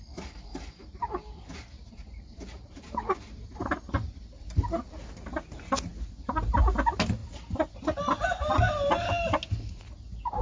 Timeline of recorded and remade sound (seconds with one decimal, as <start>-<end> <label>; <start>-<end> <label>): 0.0-0.5 recorded; 0.5-3.6 remade; 3.6-10.4 recorded